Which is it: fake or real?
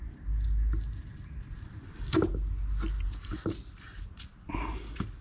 real